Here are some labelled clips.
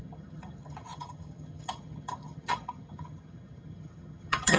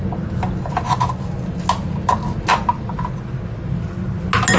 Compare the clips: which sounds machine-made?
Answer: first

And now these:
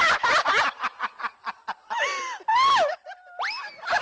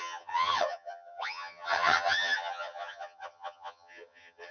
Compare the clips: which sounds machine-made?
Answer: second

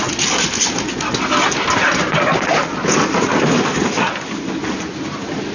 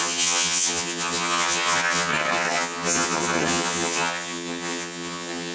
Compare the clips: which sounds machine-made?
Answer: second